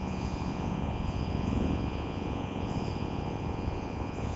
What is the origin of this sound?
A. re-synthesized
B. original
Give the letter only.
A